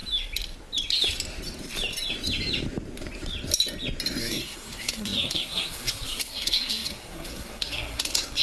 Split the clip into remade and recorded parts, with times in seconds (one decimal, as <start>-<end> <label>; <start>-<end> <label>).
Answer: 0.0-4.2 recorded; 4.2-8.4 remade

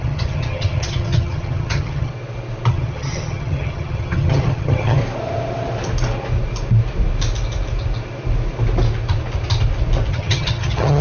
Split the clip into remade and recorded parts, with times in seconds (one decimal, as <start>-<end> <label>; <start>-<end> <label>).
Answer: 0.0-2.1 remade; 2.1-2.7 recorded; 2.7-5.0 remade; 5.0-10.1 recorded; 10.1-11.0 remade

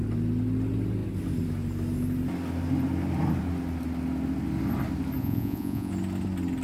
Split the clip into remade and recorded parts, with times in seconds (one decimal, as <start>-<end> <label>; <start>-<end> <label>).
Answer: 0.0-5.2 recorded; 5.2-5.9 remade; 5.9-6.6 recorded

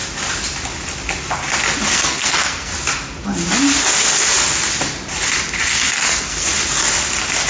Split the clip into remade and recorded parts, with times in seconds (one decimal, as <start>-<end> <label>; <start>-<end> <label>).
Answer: 0.0-1.9 recorded; 1.9-2.7 remade; 2.7-5.6 recorded; 5.6-6.5 remade; 6.5-7.5 recorded

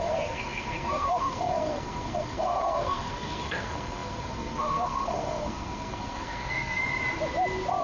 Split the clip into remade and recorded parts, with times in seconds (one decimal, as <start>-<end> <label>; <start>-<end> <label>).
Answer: 0.0-6.8 remade; 6.8-7.8 recorded